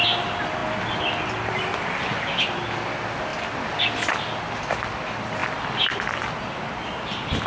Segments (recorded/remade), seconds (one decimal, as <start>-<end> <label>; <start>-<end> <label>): 0.0-7.5 recorded